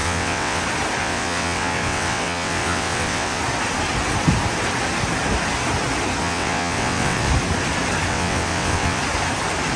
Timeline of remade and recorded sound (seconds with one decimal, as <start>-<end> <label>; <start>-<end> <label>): 0.0-0.6 remade; 0.6-1.0 recorded; 1.0-3.4 remade; 3.4-6.2 recorded; 6.2-7.3 remade; 7.3-8.1 recorded; 8.1-9.0 remade; 9.0-9.8 recorded